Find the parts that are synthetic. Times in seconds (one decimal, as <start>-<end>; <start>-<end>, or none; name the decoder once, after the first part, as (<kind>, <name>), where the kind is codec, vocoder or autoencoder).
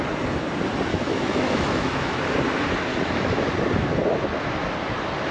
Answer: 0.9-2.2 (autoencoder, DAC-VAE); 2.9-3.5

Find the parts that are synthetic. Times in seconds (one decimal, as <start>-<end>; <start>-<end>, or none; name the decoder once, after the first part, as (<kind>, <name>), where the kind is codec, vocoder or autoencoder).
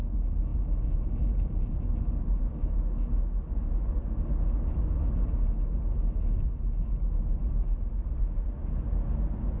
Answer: none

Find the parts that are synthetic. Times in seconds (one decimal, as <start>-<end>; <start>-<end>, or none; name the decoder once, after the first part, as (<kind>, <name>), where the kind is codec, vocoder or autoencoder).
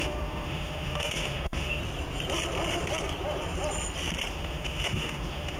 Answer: 0.0-1.8 (autoencoder, DAC-VAE); 4.3-5.6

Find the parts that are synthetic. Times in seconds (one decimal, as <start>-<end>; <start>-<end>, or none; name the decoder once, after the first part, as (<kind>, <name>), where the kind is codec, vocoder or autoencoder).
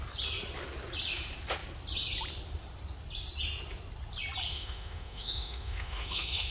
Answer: 4.5-6.5 (autoencoder, DAC-VAE)